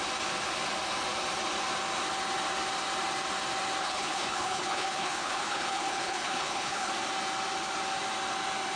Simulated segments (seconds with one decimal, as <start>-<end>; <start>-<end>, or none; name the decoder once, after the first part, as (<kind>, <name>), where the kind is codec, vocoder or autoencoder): 3.8-6.9 (codec, HILCodec)